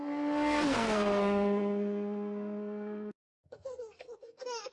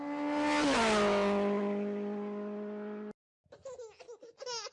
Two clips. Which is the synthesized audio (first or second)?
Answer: first